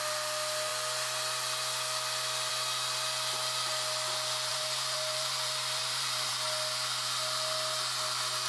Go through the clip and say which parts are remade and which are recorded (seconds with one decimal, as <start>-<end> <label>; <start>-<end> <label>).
0.0-4.5 recorded; 4.5-6.3 remade; 6.3-8.5 recorded